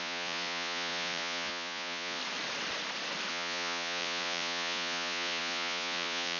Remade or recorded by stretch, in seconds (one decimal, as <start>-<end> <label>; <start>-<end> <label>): 0.0-2.2 remade; 2.2-3.3 recorded; 3.3-6.4 remade